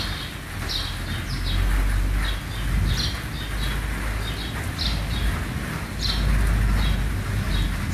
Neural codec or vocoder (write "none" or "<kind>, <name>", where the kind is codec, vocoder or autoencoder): none